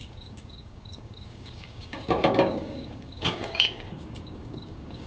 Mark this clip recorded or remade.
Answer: remade